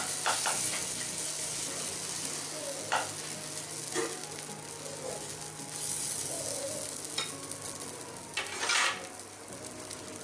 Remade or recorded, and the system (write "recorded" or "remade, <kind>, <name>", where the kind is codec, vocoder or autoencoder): recorded